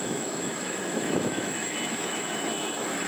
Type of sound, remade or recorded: remade